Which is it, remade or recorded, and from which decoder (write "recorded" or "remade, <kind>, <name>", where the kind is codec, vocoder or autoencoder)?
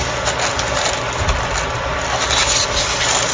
recorded